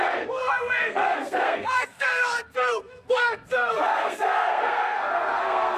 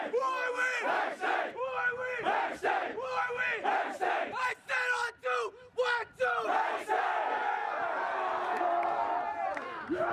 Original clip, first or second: second